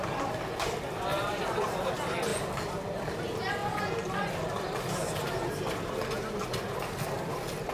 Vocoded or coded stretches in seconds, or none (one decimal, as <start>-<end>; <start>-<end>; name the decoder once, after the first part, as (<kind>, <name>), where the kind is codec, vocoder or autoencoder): 1.1-1.9 (vocoder, BigVGAN v2); 2.3-3.2